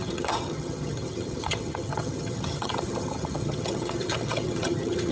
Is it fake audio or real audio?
fake